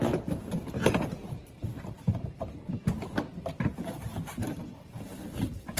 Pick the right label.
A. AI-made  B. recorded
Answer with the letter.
A